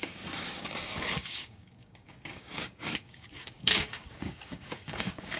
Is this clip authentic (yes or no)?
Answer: no